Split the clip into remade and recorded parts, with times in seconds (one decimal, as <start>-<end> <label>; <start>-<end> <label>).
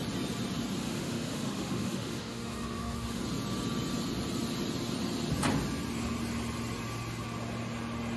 0.0-0.8 recorded; 0.8-3.2 remade; 3.2-8.2 recorded